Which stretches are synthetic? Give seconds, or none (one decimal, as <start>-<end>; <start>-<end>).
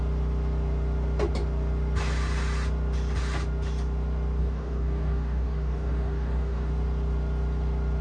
4.4-6.7